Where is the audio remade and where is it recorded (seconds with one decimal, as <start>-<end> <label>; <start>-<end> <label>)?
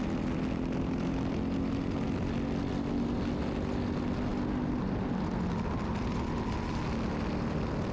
0.0-7.9 recorded